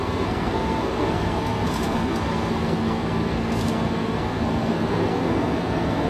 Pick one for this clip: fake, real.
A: fake